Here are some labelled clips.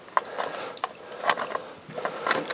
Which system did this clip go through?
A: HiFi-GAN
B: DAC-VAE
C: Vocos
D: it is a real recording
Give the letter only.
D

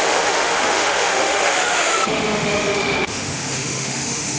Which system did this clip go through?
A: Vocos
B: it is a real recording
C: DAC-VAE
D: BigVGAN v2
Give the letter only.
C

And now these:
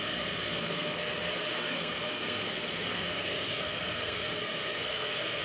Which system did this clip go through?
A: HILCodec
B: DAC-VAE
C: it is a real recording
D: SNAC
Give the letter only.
D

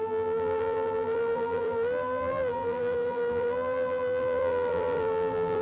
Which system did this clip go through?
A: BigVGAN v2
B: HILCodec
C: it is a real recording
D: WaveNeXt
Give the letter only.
A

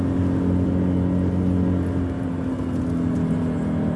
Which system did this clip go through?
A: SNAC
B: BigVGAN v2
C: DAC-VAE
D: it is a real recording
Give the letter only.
D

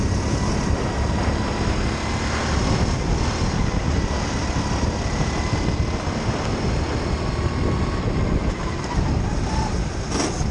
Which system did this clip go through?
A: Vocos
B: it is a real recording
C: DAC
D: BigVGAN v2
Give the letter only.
B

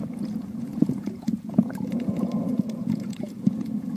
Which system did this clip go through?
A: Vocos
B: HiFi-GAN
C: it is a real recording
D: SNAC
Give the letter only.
A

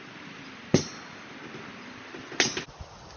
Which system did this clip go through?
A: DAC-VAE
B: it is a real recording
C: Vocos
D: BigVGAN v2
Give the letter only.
B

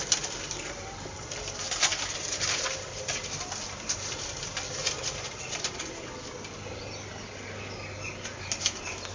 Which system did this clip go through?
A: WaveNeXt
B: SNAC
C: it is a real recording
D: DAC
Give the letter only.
C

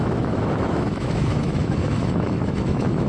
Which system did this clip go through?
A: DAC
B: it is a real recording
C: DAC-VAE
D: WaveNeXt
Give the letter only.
C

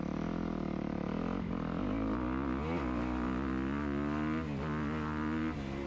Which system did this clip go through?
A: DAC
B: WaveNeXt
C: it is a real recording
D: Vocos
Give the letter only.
C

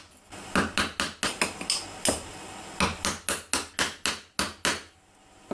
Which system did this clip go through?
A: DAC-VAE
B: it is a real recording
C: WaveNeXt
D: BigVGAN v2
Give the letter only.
B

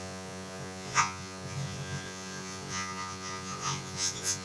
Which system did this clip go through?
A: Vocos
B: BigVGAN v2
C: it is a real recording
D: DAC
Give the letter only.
A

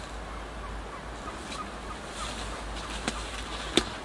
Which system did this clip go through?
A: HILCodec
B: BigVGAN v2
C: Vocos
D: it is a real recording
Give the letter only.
D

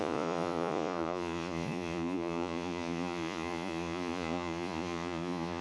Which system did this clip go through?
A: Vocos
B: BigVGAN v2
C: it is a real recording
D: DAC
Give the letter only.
A